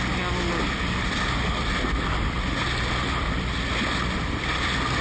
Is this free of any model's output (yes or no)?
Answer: yes